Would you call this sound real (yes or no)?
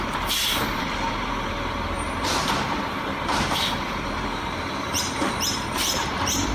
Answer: no